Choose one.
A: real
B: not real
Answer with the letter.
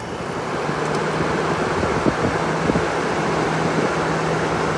A